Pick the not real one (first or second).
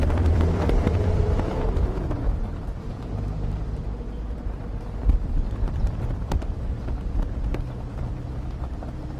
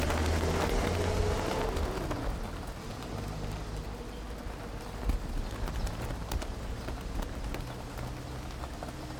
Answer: first